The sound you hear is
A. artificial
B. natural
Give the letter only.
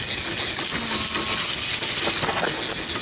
B